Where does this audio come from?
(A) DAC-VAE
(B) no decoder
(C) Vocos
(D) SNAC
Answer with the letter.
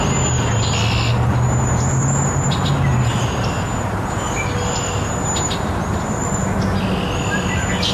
B